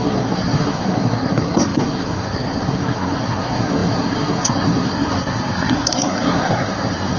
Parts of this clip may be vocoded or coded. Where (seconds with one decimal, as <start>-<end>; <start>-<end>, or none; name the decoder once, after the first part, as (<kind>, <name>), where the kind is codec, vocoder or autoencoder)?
0.0-7.2 (codec, SNAC)